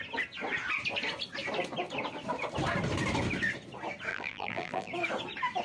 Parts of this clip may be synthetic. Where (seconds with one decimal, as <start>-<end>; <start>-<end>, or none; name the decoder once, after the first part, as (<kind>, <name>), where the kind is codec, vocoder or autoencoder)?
4.1-4.9 (vocoder, BigVGAN v2)